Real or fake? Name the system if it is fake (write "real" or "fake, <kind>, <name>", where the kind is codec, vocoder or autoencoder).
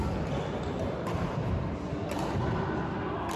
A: real